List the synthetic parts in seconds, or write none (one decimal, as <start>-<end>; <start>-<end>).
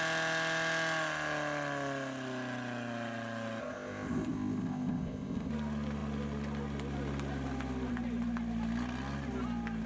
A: 3.6-5.5